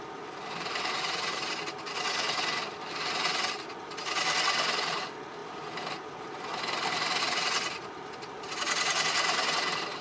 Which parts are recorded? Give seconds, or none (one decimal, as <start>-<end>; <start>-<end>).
0.0-10.0